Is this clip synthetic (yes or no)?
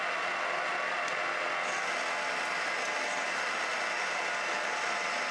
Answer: no